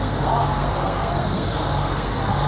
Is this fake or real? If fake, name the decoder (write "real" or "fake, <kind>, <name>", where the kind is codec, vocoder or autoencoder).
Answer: fake, codec, SNAC